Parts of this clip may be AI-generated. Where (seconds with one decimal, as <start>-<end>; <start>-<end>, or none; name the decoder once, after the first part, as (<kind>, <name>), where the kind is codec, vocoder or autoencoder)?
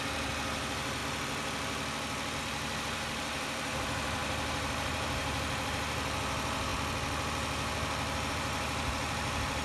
0.0-1.0 (vocoder, BigVGAN v2); 2.4-6.7; 8.3-9.6